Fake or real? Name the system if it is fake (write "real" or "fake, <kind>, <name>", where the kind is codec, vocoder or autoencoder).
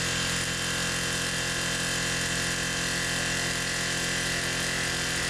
real